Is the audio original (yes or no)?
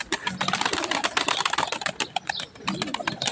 yes